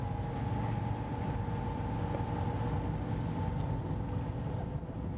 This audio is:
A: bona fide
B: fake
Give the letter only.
A